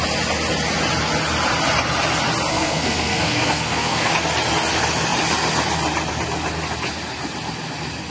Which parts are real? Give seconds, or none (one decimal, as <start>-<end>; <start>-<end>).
0.0-2.5; 4.1-8.1